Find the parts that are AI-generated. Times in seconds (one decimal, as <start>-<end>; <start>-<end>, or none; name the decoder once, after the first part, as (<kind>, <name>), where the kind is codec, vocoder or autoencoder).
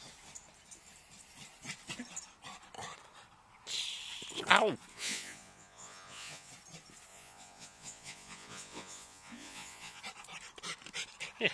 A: 4.9-6.5 (vocoder, Vocos); 7.1-10.0